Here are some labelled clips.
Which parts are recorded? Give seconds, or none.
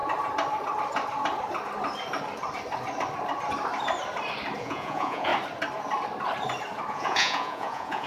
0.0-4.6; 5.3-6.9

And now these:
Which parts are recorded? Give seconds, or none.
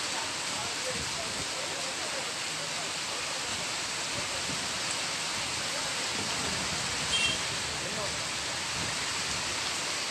0.0-10.1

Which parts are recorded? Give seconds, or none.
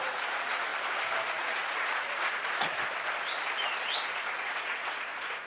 0.7-1.3; 2.3-4.1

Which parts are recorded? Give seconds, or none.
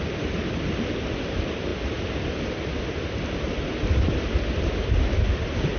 0.0-5.8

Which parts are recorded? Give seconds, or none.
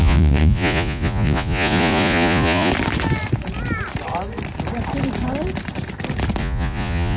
2.7-6.4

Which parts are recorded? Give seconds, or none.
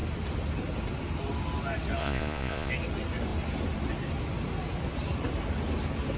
0.0-2.0; 2.7-6.2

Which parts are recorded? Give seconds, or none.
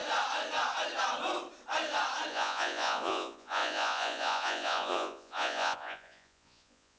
0.0-2.3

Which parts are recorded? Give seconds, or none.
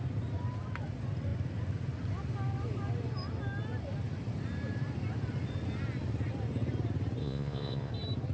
0.0-7.2; 7.9-8.3